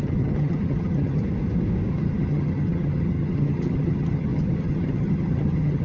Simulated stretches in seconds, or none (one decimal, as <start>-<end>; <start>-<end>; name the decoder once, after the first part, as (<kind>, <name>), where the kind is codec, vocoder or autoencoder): 0.0-1.2 (vocoder, HiFi-GAN); 1.9-5.8